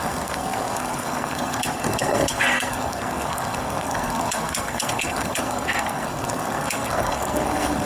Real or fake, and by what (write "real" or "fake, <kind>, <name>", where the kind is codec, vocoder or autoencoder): fake, codec, SNAC